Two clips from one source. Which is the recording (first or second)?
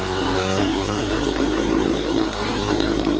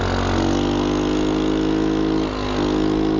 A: second